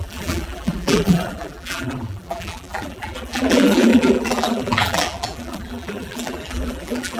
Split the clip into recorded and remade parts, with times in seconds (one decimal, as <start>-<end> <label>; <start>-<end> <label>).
0.0-7.2 remade